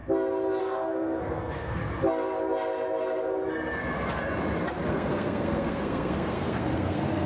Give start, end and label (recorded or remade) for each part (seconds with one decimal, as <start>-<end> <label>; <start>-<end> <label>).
0.0-0.6 recorded; 0.6-1.8 remade; 1.8-4.9 recorded; 4.9-7.3 remade